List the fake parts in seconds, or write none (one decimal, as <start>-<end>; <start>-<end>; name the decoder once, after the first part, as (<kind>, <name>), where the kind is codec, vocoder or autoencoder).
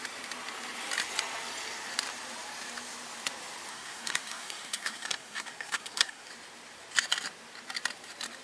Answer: 3.7-6.3 (codec, SNAC)